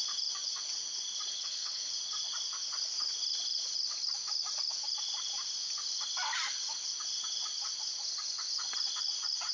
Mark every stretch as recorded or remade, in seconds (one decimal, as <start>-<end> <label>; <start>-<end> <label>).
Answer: 0.0-1.3 recorded; 1.3-1.9 remade; 1.9-9.5 recorded